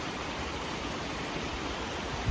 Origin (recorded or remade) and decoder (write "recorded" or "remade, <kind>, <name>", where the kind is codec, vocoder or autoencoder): recorded